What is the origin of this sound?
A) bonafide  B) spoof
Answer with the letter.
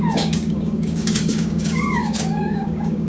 B